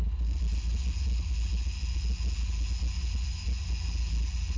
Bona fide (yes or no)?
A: yes